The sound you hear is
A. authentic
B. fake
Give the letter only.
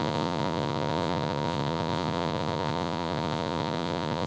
B